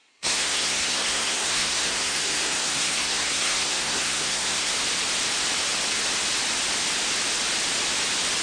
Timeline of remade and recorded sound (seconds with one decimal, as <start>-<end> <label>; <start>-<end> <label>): 0.0-4.7 remade; 4.7-8.4 recorded